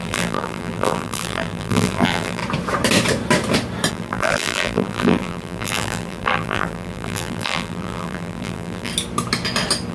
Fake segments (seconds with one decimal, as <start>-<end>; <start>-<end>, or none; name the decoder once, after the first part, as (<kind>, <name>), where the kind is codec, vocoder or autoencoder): 0.0-2.4 (vocoder, BigVGAN v2); 3.9-8.9